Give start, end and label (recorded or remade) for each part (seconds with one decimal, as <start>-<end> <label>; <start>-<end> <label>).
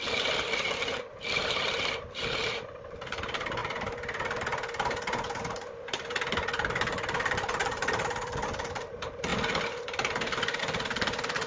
0.0-11.5 recorded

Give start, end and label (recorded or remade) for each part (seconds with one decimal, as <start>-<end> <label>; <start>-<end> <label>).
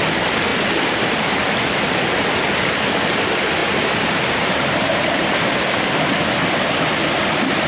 0.0-3.6 recorded; 3.6-6.0 remade; 6.0-7.7 recorded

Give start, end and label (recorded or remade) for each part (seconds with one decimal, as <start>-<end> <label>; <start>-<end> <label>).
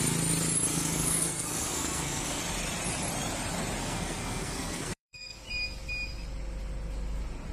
0.0-0.7 recorded; 0.7-2.4 remade; 2.4-3.8 recorded; 3.8-5.4 remade; 5.4-7.5 recorded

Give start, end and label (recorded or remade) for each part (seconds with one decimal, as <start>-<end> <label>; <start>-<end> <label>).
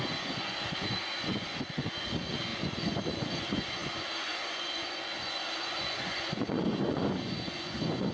0.0-8.1 remade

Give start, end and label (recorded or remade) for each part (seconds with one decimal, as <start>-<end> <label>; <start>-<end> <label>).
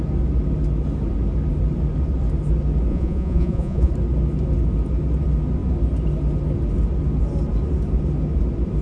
0.0-2.9 recorded; 2.9-3.9 remade; 3.9-8.8 recorded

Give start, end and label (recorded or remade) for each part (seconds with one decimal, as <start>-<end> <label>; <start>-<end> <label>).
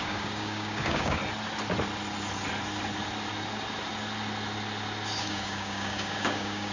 0.0-1.2 remade; 1.2-5.2 recorded; 5.2-6.7 remade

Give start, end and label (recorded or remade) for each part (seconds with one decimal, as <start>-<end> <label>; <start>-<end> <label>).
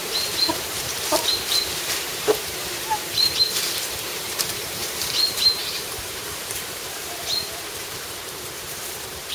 0.0-9.3 remade